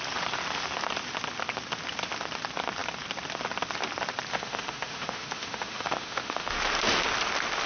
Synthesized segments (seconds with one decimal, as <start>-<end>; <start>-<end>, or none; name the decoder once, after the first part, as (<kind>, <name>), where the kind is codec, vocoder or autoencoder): 4.3-6.6 (autoencoder, DAC-VAE)